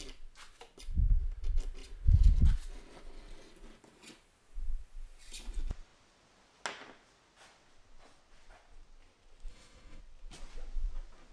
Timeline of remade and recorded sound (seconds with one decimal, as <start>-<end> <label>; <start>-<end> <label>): 0.0-9.5 recorded; 9.5-10.0 remade; 10.0-11.3 recorded